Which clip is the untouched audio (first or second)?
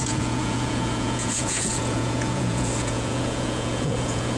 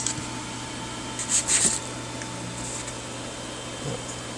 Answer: second